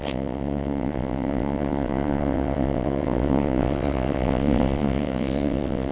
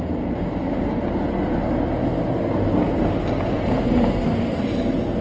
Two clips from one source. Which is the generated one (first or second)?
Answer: first